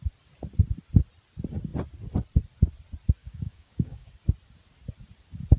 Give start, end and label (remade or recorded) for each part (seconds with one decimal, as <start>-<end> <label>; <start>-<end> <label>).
0.0-3.2 recorded; 3.2-4.1 remade; 4.1-5.6 recorded